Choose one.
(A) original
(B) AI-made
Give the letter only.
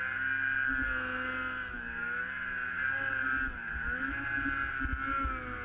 A